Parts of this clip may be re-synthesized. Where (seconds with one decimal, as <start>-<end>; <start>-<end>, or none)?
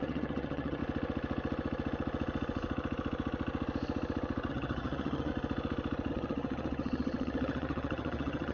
0.0-0.8; 4.5-5.3; 6.1-8.5